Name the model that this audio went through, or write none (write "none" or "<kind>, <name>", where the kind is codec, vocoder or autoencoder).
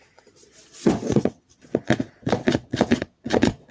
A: vocoder, Vocos